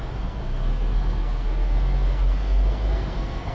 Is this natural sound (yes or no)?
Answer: no